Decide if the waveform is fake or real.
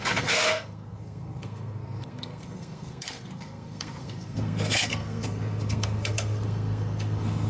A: fake